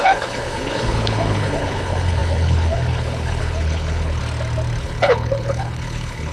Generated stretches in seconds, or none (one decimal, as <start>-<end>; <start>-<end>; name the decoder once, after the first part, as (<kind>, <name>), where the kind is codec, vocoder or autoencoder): 0.0-4.2 (codec, HILCodec); 4.8-6.3